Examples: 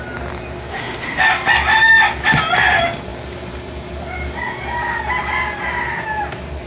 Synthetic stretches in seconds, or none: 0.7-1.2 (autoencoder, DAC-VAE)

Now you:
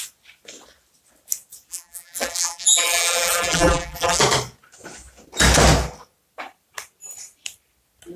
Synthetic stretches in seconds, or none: 1.7-4.2 (vocoder, BigVGAN v2)